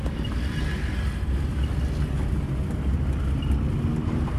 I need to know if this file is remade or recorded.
recorded